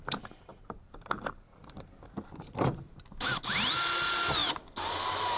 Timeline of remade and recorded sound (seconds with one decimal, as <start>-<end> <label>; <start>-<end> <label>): 0.0-5.4 remade